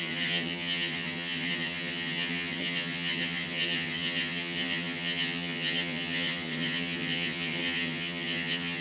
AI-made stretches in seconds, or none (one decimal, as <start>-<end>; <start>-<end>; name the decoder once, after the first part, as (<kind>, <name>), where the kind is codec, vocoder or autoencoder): 0.0-8.8 (vocoder, HiFi-GAN)